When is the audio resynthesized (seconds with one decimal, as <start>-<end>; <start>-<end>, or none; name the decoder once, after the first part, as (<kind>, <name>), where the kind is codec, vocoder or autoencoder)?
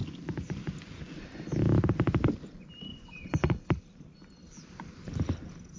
2.9-3.5 (vocoder, Vocos)